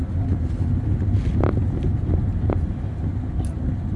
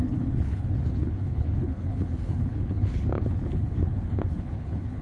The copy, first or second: second